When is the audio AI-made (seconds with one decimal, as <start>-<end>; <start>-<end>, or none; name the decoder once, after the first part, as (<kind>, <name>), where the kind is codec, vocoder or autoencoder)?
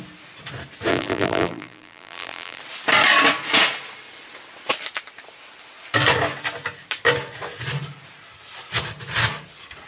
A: 0.9-2.6 (vocoder, BigVGAN v2)